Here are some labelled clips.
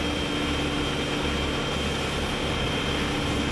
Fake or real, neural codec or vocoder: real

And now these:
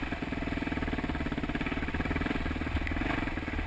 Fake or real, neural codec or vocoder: real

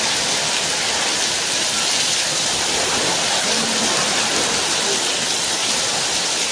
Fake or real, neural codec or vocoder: fake, vocoder, BigVGAN v2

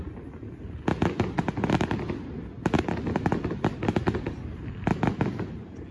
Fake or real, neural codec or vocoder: real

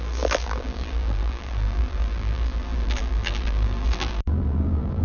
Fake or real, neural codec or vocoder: fake, vocoder, BigVGAN v2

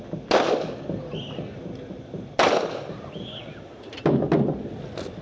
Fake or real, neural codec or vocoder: real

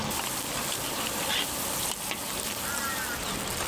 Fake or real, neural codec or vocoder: real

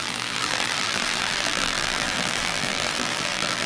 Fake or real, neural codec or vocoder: fake, vocoder, BigVGAN v2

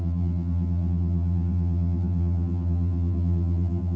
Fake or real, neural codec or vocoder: fake, vocoder, BigVGAN v2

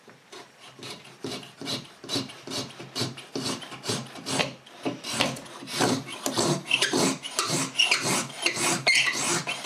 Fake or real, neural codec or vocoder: fake, vocoder, BigVGAN v2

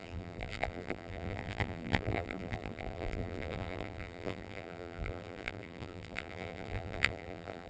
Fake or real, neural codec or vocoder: fake, vocoder, BigVGAN v2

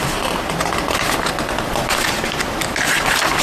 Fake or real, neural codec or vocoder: fake, vocoder, BigVGAN v2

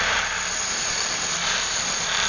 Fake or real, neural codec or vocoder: fake, vocoder, BigVGAN v2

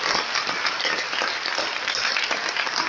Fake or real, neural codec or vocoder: real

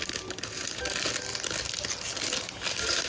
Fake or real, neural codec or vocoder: real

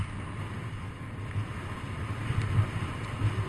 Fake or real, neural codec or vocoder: real